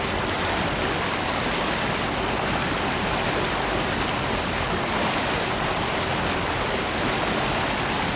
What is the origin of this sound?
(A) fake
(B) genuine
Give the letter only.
B